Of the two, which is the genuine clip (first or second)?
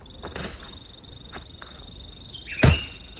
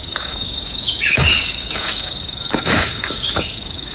first